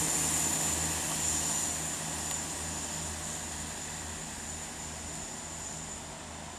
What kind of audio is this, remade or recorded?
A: recorded